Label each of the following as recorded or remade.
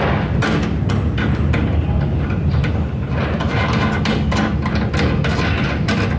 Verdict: recorded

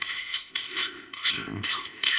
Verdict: remade